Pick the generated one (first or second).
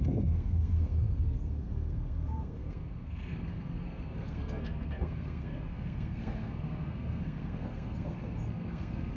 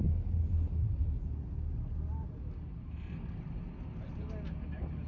first